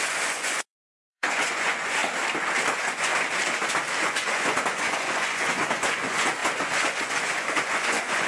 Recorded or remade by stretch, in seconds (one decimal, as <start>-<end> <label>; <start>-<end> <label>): 0.0-2.0 remade; 2.0-2.7 recorded; 2.7-3.1 remade; 3.1-4.0 recorded; 4.0-8.3 remade